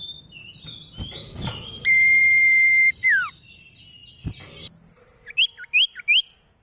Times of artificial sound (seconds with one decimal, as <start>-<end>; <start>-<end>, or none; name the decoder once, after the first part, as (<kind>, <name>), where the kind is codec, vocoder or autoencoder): none